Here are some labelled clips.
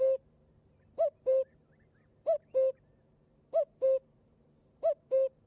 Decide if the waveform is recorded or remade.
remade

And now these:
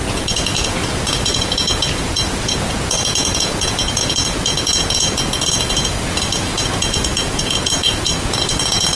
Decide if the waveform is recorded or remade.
remade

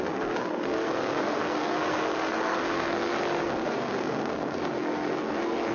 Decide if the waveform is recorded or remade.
remade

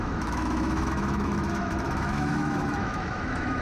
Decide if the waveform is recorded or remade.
remade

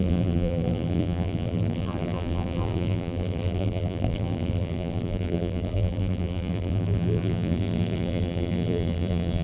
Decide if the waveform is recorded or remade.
remade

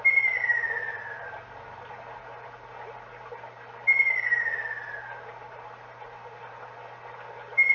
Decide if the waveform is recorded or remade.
recorded